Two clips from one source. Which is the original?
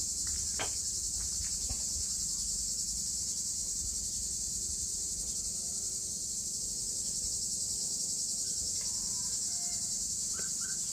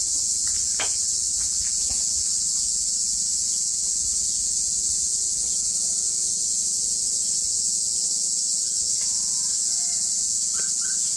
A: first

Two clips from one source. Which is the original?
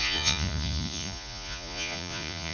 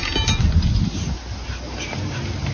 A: second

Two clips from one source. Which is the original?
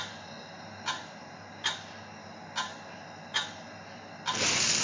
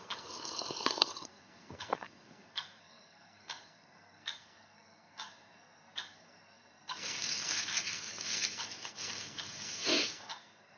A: first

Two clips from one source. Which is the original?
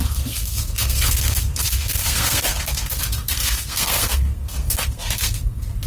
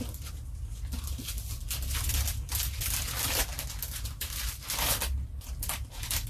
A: second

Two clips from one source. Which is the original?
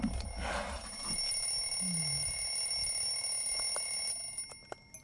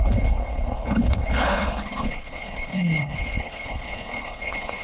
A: first